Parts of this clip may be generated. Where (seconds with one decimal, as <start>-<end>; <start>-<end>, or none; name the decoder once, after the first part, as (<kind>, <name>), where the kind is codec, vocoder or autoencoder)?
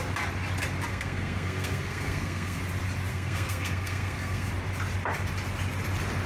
0.9-2.6 (codec, SNAC); 3.1-4.5